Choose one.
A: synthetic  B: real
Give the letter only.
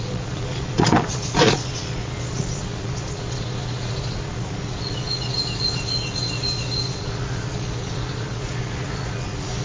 A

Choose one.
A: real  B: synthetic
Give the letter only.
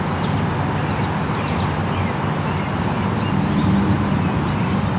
A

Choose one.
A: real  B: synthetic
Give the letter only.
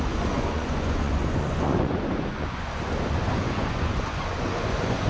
B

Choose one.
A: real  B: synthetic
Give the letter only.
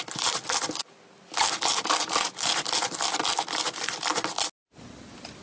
A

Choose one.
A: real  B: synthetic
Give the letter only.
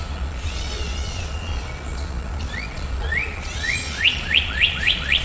B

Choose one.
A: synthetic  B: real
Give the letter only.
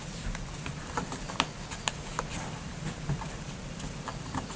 B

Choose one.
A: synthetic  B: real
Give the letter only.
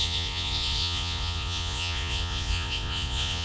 A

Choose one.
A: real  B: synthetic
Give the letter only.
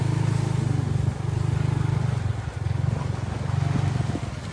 A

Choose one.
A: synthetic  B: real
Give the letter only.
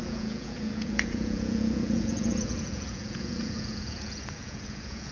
A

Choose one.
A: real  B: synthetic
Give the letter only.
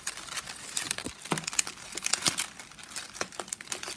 A